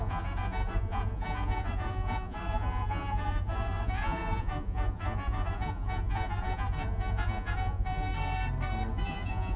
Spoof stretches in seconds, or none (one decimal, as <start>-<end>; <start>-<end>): 0.0-8.1; 8.9-9.6